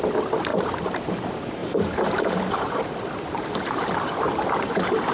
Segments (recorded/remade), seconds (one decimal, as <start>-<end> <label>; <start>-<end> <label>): 0.0-0.5 recorded; 0.5-1.1 remade; 1.1-1.6 recorded; 1.6-5.1 remade